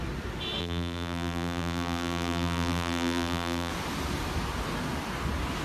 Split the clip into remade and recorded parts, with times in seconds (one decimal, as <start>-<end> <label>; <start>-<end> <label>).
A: 0.0-0.6 recorded; 0.6-3.7 remade; 3.7-5.6 recorded